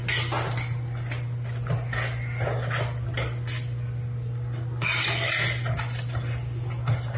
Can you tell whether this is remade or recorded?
recorded